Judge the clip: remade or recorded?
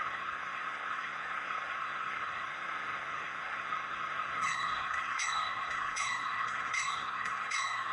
remade